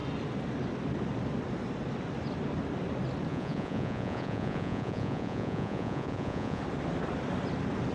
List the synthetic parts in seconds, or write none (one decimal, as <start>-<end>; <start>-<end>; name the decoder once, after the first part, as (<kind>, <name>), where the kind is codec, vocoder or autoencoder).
3.3-6.6 (vocoder, Vocos)